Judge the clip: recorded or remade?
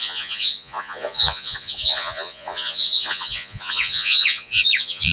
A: remade